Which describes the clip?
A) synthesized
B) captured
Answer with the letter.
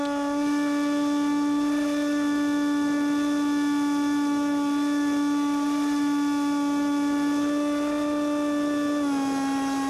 B